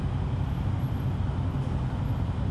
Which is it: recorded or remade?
recorded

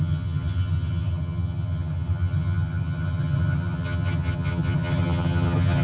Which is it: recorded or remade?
remade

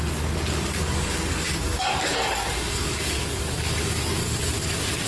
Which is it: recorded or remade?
remade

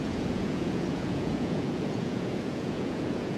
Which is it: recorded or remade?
remade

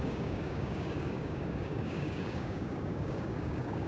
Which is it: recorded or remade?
remade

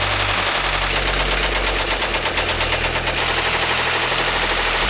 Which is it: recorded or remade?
recorded